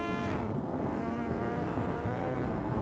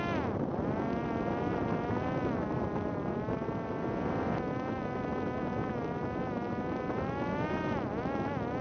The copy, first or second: first